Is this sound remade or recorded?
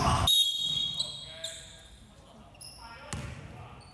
recorded